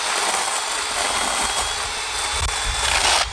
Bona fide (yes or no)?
yes